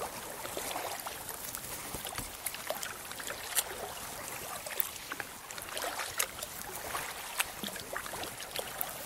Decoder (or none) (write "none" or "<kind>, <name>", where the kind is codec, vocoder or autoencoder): none